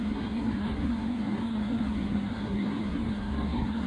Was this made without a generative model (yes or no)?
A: no